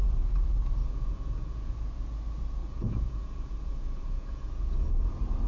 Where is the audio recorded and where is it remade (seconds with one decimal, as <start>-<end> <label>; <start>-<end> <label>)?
0.0-0.8 recorded; 0.8-1.7 remade; 1.7-2.6 recorded; 2.6-5.1 remade; 5.1-5.5 recorded